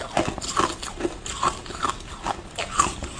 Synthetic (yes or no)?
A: no